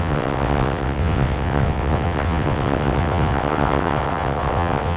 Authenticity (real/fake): fake